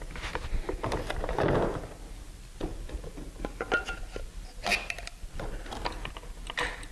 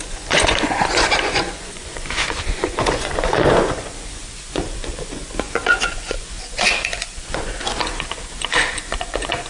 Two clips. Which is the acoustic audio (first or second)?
first